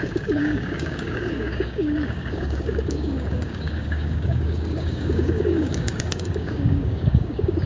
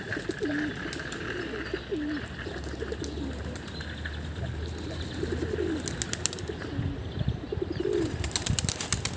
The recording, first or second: second